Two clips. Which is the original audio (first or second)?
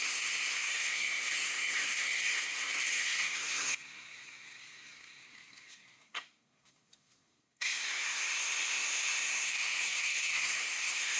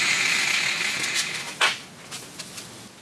second